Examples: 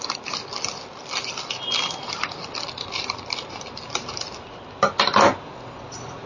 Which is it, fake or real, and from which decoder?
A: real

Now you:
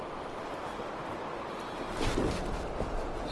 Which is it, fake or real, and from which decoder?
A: real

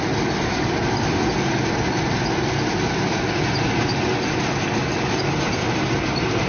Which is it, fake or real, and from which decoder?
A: real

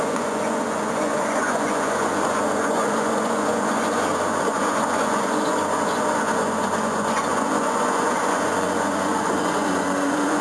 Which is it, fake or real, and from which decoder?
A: fake, vocoder, Vocos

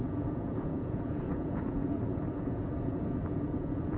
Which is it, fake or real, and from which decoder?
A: fake, vocoder, Vocos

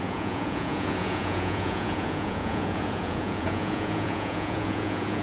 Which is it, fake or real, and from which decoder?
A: fake, vocoder, Vocos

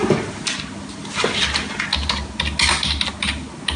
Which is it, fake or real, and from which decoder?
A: real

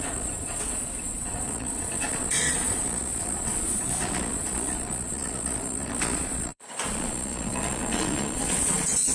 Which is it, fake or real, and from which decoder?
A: fake, vocoder, Vocos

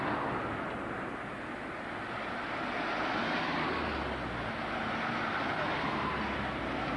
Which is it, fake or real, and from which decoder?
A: real